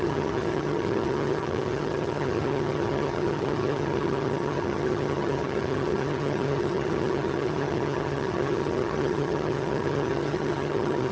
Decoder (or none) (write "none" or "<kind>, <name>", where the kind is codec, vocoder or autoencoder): vocoder, HiFi-GAN